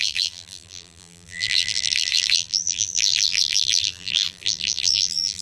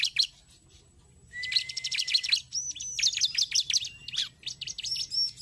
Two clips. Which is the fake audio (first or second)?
first